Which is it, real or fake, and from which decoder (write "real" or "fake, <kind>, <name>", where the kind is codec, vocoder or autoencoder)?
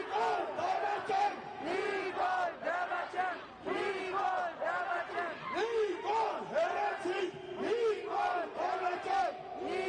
real